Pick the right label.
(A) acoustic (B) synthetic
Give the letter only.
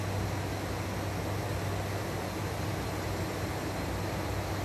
A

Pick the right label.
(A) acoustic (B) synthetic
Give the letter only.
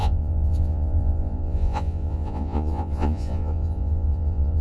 B